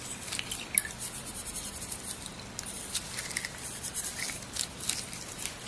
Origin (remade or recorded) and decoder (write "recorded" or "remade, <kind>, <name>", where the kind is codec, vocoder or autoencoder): recorded